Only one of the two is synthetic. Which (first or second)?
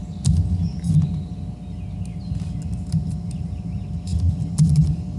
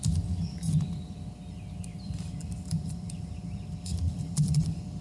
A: second